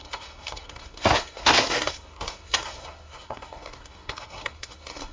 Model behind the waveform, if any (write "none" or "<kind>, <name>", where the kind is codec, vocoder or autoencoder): codec, SNAC